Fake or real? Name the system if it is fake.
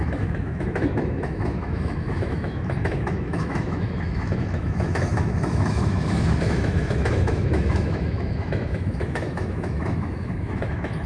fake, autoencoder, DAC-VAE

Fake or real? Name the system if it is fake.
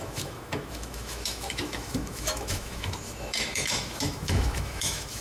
fake, autoencoder, DAC-VAE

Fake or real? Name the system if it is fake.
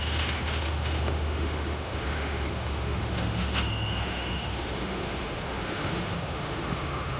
fake, autoencoder, DAC-VAE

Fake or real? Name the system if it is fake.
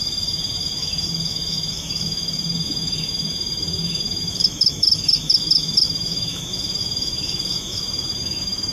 fake, autoencoder, DAC-VAE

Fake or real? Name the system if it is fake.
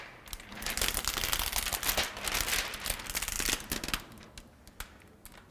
real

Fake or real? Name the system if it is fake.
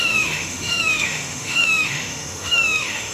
fake, autoencoder, DAC-VAE